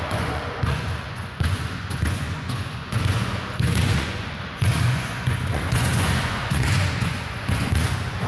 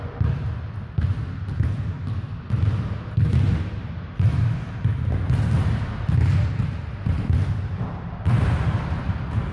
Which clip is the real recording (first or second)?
second